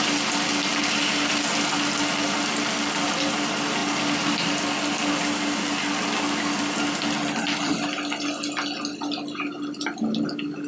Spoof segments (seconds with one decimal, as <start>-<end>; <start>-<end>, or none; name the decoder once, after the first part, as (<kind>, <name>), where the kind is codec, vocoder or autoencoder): none